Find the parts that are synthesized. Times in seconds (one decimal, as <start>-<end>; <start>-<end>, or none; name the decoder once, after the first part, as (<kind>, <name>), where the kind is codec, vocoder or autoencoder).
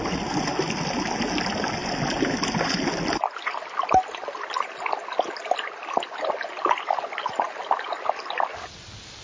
none